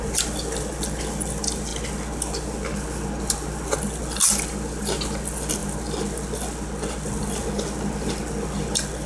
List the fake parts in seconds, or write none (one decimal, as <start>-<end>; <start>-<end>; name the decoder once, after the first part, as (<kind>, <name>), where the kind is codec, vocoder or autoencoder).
none